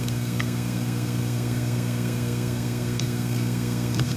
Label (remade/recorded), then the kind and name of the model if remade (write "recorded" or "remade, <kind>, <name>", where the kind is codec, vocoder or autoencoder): remade, codec, SNAC